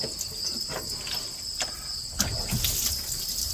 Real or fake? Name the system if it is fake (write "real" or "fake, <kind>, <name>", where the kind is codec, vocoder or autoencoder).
real